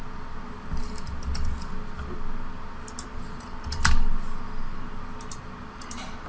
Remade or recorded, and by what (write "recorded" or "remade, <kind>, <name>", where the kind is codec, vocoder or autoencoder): recorded